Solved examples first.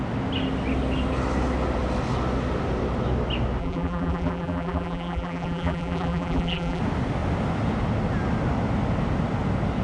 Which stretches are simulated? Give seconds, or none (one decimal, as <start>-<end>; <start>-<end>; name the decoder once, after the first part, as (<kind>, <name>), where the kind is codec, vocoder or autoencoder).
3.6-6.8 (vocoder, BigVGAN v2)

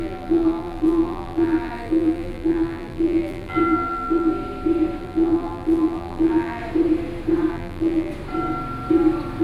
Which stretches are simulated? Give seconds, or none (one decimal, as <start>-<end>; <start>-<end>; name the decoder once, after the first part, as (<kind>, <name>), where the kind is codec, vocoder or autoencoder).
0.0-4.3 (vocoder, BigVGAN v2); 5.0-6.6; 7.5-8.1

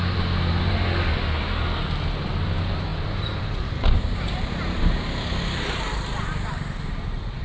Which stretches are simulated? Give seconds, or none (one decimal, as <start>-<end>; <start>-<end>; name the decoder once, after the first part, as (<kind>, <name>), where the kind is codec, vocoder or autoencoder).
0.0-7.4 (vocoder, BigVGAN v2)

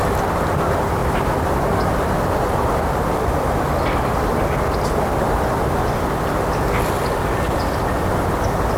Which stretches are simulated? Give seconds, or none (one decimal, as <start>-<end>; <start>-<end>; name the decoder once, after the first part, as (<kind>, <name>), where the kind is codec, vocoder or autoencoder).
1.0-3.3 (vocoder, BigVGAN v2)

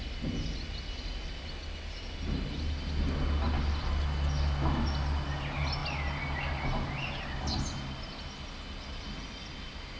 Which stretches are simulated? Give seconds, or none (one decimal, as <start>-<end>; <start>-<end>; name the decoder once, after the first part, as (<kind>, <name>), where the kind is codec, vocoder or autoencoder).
none